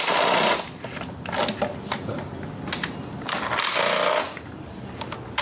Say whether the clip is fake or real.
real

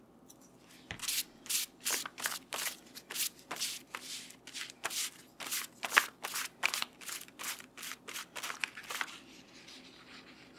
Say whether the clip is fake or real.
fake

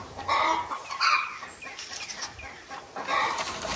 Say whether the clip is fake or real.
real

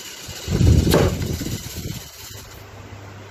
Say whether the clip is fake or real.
real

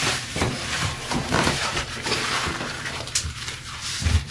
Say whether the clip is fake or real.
fake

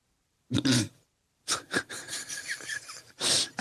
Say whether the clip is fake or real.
fake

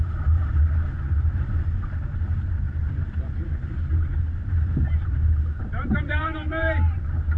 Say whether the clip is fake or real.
fake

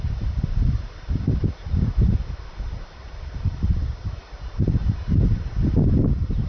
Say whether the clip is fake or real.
real